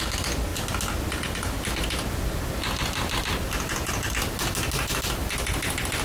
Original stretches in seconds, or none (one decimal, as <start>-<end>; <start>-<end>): 0.0-6.0